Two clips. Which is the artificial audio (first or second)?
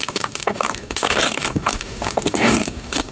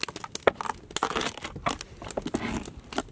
first